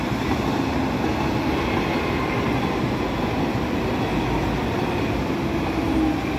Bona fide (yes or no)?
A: yes